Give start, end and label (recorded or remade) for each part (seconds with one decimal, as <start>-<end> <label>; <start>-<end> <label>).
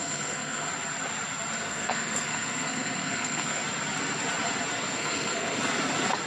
0.0-0.7 remade; 0.7-1.6 recorded; 1.6-3.6 remade; 3.6-4.7 recorded; 4.7-5.6 remade; 5.6-6.3 recorded